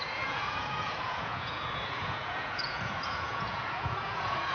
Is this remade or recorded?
remade